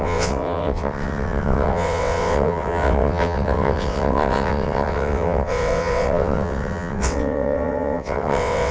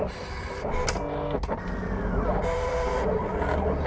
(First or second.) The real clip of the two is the second